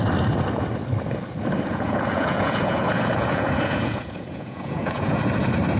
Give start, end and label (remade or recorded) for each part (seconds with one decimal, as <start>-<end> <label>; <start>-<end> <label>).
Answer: 0.0-1.7 recorded; 1.7-5.2 remade; 5.2-5.8 recorded